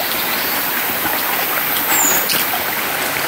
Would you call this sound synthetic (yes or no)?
no